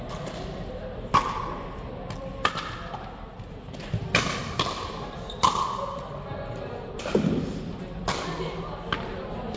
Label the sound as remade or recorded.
recorded